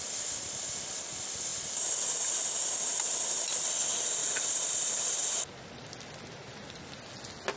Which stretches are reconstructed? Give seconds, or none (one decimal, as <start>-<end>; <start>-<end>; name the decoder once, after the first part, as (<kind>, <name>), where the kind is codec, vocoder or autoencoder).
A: 4.2-5.9 (vocoder, BigVGAN v2)